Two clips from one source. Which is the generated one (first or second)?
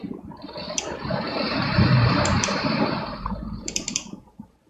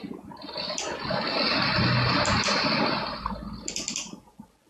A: first